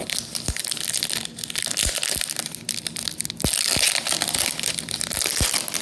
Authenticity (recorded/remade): recorded